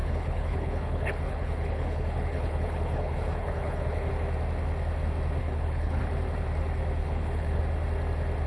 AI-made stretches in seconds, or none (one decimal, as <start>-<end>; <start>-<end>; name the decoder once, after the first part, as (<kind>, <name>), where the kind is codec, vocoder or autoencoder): 0.0-4.1 (codec, HILCodec); 5.4-6.0; 7.0-7.6